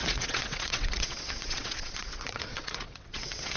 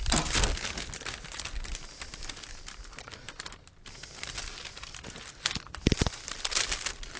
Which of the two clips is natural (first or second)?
second